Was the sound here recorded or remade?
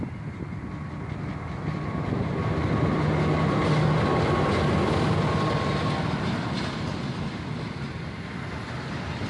recorded